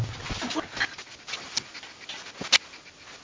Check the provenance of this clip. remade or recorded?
recorded